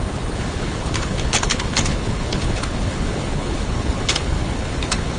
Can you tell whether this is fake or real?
fake